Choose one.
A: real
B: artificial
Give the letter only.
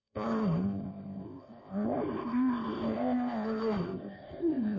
B